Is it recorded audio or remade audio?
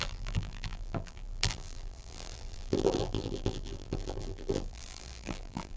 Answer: remade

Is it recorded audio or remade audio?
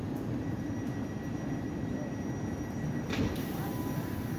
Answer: recorded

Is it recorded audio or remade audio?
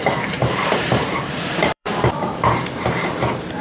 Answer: remade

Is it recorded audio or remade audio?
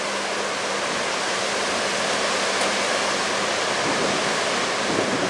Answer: recorded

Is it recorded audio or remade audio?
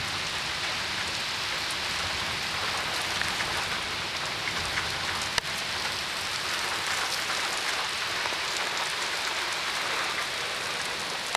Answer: recorded